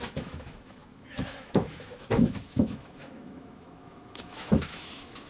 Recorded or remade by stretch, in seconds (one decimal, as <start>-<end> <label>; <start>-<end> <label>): 0.0-5.3 remade